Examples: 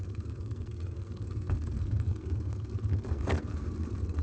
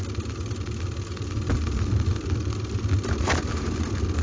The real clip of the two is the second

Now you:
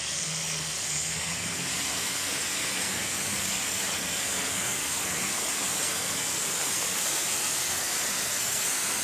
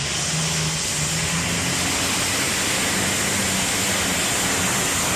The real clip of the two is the second